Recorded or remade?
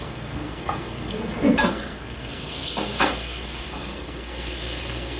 remade